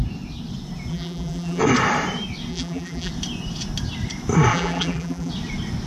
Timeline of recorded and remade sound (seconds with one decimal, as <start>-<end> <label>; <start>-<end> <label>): 0.0-0.9 recorded; 0.9-1.6 remade; 1.6-2.5 recorded; 2.5-3.1 remade; 3.1-4.5 recorded; 4.5-5.3 remade; 5.3-5.9 recorded